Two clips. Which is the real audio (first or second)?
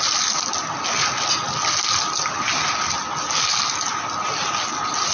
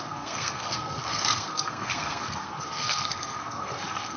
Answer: first